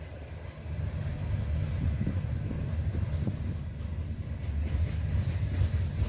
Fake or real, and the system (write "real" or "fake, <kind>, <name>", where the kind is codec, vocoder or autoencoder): real